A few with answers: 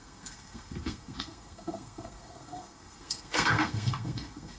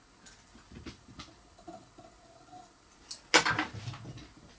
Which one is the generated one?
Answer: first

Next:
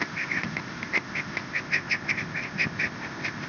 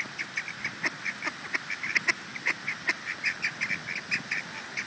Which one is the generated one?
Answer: first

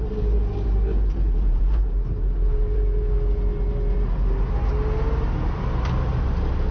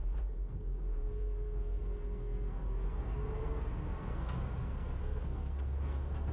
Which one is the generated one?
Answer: second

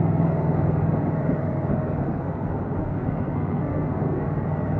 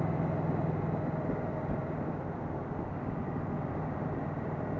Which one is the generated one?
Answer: first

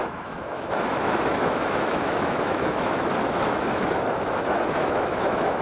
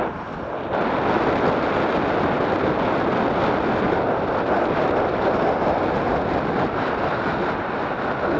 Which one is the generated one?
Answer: first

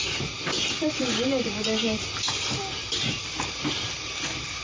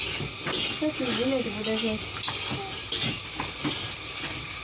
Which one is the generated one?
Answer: first